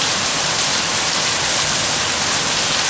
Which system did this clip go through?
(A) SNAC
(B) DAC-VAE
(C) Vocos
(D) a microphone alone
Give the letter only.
D